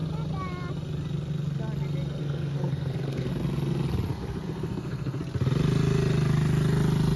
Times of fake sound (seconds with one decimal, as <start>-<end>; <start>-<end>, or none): 2.2-3.3; 4.1-5.2